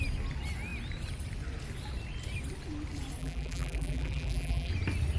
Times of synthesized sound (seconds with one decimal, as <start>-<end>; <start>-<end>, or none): 3.2-4.7